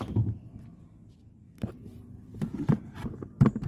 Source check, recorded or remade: remade